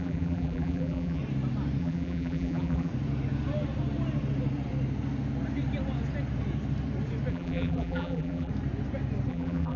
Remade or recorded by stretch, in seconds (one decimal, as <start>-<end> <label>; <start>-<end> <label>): 0.0-1.2 remade; 1.2-1.8 recorded; 1.8-2.9 remade; 2.9-7.3 recorded; 7.3-8.5 remade; 8.5-9.3 recorded; 9.3-9.8 remade